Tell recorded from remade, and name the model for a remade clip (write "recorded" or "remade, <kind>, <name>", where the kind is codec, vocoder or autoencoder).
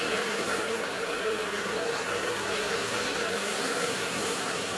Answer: remade, codec, SNAC